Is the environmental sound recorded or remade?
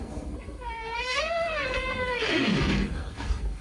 remade